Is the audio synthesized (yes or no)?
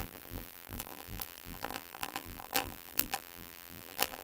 yes